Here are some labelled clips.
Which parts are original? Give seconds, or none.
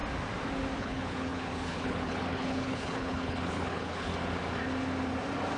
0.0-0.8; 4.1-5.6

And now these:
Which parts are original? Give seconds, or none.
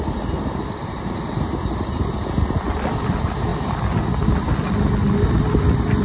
0.0-6.0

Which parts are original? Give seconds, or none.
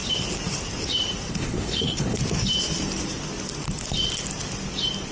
0.0-1.3; 2.2-5.1